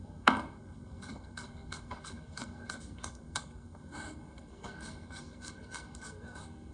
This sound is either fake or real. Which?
fake